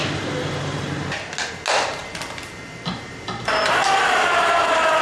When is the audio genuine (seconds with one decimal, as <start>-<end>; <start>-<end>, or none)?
0.0-2.0